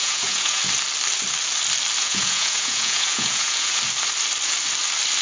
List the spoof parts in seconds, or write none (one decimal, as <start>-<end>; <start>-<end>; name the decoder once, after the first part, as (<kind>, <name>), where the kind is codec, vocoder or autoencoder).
0.0-0.6 (vocoder, Vocos); 2.0-3.8